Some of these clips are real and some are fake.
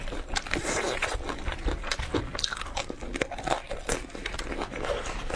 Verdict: real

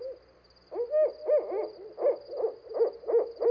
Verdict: real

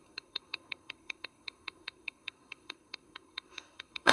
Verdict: fake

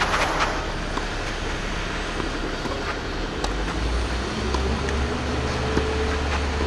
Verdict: real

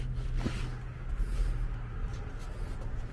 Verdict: real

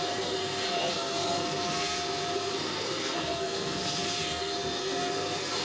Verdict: fake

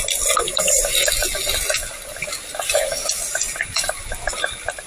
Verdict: real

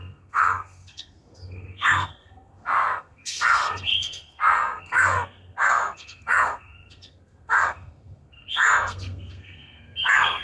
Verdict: fake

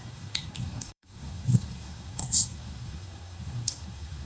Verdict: fake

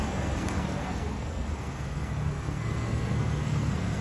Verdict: fake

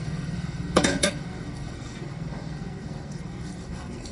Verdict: fake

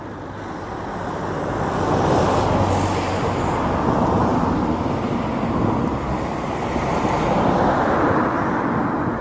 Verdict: real